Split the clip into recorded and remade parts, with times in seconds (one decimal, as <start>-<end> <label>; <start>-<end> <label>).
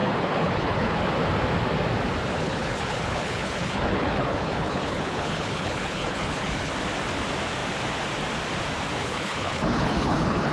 0.0-1.0 remade; 1.0-2.3 recorded; 2.3-6.7 remade; 6.7-9.0 recorded; 9.0-10.5 remade